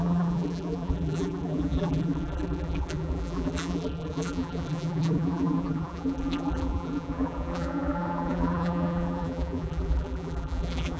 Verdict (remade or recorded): remade